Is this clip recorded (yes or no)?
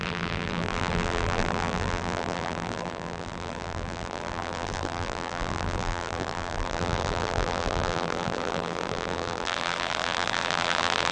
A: no